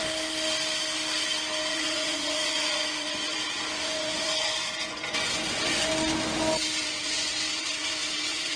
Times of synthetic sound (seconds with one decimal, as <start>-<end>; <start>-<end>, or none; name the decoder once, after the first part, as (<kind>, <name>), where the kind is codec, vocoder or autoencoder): 1.7-5.9 (vocoder, Vocos); 6.8-8.6